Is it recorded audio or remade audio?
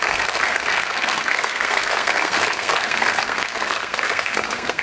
remade